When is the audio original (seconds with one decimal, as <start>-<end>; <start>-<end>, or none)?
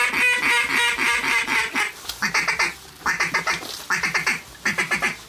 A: 0.0-0.7; 1.6-5.3